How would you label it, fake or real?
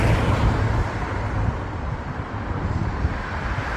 fake